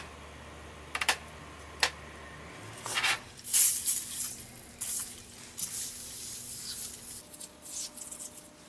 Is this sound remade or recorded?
recorded